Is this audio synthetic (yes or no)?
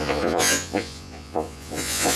yes